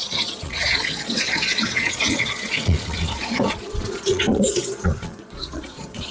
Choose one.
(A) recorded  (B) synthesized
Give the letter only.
B